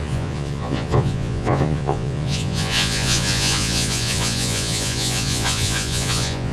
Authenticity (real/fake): fake